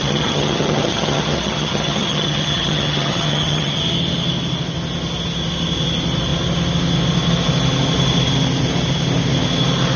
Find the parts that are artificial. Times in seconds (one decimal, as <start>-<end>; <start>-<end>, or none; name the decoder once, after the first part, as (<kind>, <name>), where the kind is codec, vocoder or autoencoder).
0.0-3.8 (vocoder, HiFi-GAN)